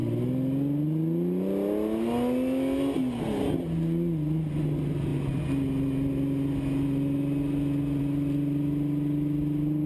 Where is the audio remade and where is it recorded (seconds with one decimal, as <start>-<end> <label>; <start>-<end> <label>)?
0.0-9.9 recorded